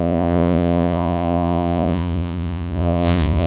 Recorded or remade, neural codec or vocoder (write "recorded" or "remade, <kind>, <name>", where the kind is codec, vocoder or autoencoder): remade, vocoder, Vocos